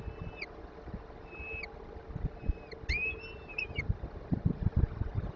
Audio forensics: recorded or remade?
recorded